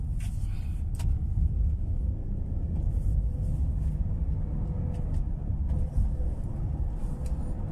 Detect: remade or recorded recorded